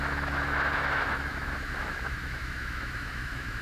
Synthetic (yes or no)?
yes